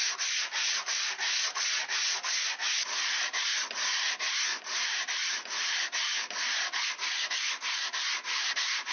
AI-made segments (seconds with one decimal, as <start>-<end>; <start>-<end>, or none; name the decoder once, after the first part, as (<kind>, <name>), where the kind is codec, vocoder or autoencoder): 0.0-0.9 (vocoder, BigVGAN v2); 4.5-5.8